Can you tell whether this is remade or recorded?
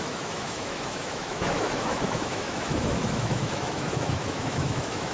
remade